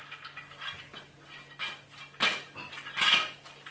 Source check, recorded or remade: recorded